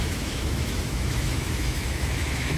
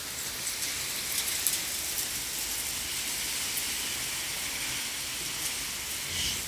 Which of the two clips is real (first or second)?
second